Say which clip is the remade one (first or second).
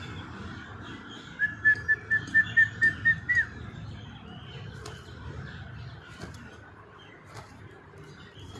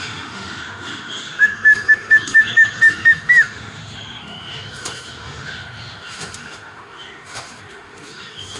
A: second